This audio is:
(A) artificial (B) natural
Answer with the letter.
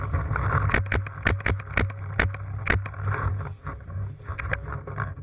B